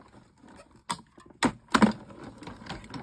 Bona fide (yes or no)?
yes